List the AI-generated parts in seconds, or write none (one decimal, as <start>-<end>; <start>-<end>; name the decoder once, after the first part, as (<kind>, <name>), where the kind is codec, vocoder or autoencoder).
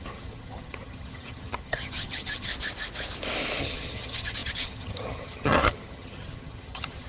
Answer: 0.0-2.5 (vocoder, HiFi-GAN); 3.6-7.1